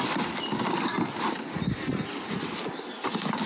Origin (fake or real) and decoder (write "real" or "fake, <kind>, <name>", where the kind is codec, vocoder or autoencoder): real